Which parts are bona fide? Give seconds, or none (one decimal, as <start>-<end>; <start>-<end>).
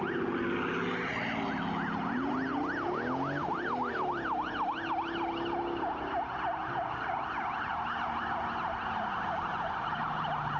0.0-10.6